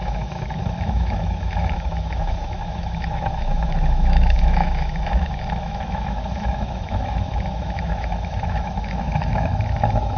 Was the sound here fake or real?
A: fake